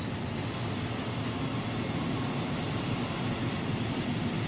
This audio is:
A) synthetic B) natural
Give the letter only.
B